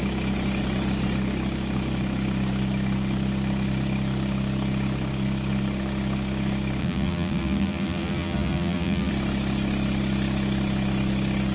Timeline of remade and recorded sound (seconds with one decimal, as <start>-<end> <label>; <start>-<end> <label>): 0.0-6.8 recorded; 6.8-9.1 remade; 9.1-11.5 recorded